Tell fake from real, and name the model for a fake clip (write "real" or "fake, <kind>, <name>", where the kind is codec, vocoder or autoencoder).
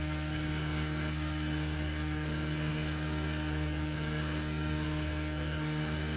fake, codec, SNAC